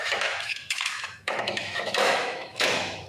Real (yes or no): no